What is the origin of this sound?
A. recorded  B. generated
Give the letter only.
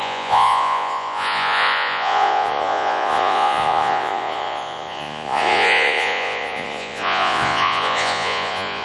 B